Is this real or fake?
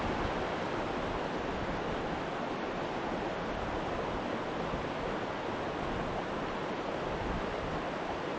real